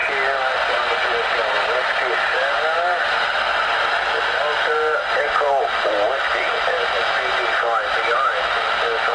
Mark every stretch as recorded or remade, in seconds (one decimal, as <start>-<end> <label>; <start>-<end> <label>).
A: 0.0-9.1 recorded